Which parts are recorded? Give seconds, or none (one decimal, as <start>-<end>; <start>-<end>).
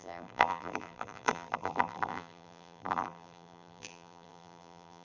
none